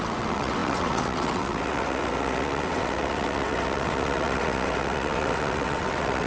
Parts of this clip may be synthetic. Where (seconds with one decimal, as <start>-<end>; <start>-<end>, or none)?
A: 0.0-6.3